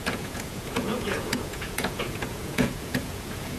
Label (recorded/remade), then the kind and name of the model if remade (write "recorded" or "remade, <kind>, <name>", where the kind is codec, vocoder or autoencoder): remade, vocoder, Vocos